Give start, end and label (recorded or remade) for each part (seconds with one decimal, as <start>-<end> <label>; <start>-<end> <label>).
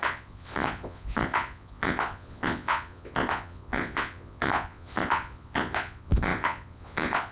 0.0-7.3 remade